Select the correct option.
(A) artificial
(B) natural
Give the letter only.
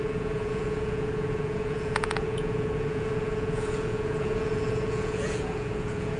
A